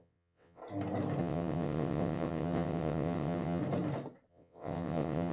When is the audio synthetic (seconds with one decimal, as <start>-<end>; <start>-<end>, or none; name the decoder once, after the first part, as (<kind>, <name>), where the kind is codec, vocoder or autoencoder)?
0.0-0.6 (vocoder, WaveNeXt); 1.2-3.6; 4.3-5.3